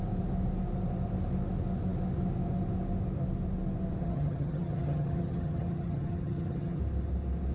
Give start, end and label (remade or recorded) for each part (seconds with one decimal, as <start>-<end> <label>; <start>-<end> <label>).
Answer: 0.0-4.0 recorded; 4.0-6.8 remade; 6.8-7.5 recorded